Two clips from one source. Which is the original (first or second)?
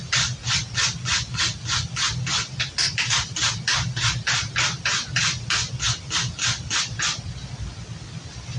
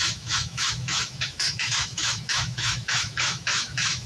first